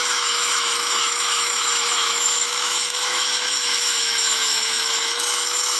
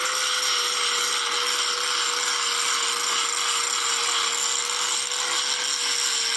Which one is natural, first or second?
second